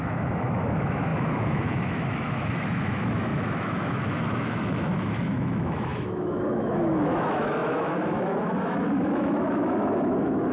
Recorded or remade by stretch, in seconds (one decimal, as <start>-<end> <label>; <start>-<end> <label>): 0.0-10.5 remade